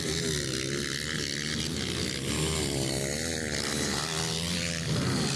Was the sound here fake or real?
real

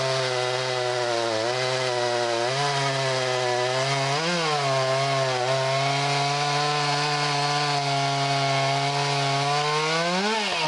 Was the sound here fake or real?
real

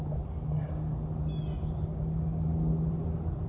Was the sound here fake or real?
real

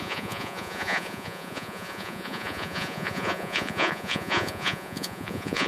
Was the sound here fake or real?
fake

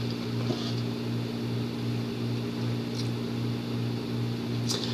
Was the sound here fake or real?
real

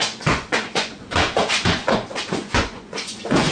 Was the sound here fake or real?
fake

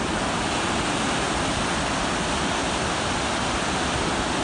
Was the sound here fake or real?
real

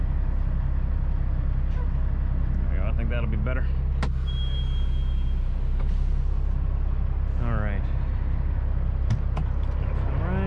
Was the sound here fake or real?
real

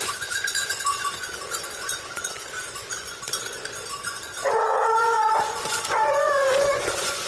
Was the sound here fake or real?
fake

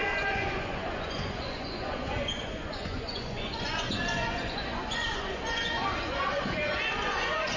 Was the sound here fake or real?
fake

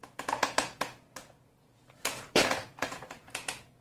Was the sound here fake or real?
fake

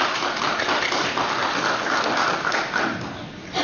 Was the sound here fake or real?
real